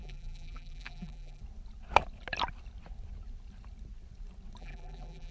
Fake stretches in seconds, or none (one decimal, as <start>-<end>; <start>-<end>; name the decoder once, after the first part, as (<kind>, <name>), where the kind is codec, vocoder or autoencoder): 0.0-1.4 (vocoder, BigVGAN v2); 4.6-5.3